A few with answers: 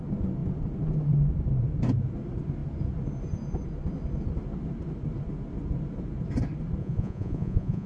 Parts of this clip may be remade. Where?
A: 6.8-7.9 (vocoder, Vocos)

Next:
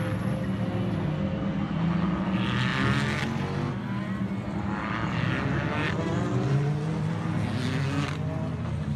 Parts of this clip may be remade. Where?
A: none

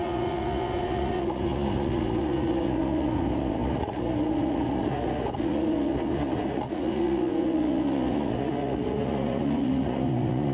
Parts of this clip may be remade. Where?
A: 0.0-10.5 (vocoder, Vocos)

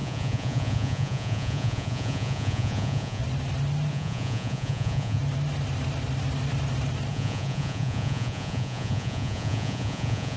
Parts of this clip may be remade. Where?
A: 0.0-3.2 (vocoder, Vocos); 3.9-5.2; 7.1-10.4

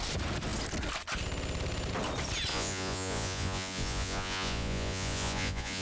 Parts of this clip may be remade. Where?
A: 2.5-5.8 (vocoder, Vocos)

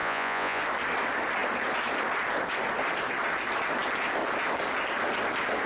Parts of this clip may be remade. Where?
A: 0.0-0.6 (vocoder, Vocos)

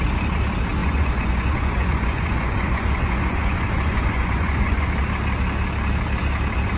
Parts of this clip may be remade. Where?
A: 0.8-4.9 (vocoder, Vocos)